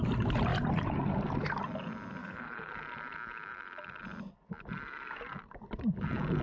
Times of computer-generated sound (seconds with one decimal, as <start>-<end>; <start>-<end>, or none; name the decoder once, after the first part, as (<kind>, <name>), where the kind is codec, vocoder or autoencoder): 2.2-2.7 (codec, HILCodec)